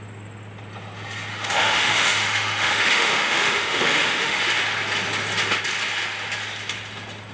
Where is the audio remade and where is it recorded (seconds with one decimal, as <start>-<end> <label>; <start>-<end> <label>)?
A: 0.0-1.3 recorded; 1.3-4.4 remade; 4.4-7.3 recorded